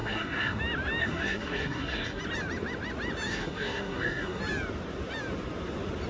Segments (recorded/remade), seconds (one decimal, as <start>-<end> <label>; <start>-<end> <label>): 0.0-0.6 remade; 0.6-1.0 recorded; 1.0-2.2 remade; 2.2-3.3 recorded; 3.3-4.4 remade; 4.4-6.1 recorded